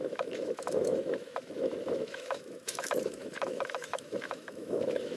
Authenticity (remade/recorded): remade